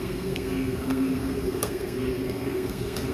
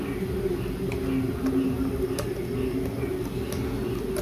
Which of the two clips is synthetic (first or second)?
first